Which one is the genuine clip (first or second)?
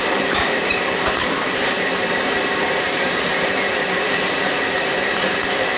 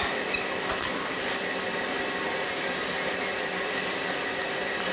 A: second